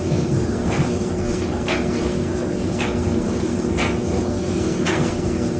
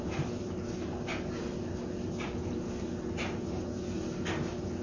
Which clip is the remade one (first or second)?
first